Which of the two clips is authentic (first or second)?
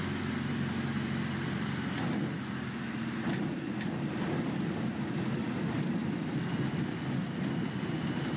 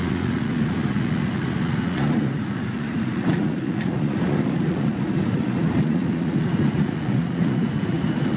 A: first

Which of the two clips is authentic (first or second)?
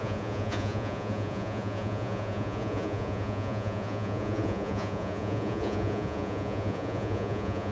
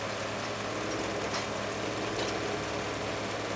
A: second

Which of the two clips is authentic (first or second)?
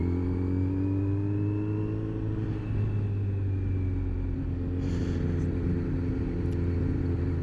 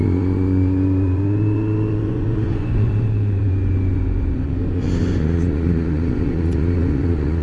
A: first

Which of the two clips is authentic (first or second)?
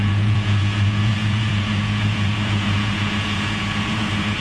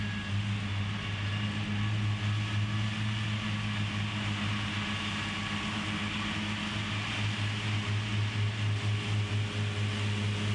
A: second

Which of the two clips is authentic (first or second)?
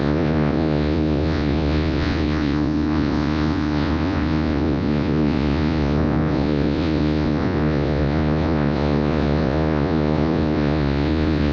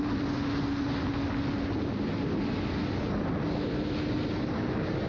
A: second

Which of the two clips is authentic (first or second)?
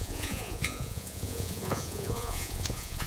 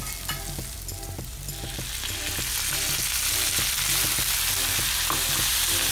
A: second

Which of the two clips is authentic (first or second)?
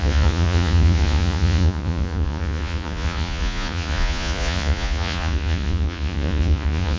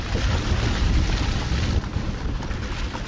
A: second